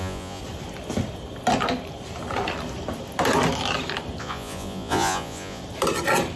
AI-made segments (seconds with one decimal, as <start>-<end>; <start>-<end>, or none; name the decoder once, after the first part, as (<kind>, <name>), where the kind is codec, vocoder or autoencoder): 0.0-0.4 (vocoder, Vocos); 4.2-5.6